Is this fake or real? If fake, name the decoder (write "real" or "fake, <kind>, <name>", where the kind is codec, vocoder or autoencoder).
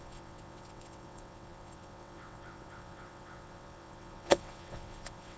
fake, vocoder, WaveNeXt